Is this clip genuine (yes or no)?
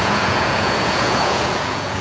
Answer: no